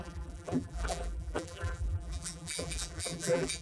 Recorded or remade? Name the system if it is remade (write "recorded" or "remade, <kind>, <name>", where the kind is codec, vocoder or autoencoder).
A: remade, vocoder, BigVGAN v2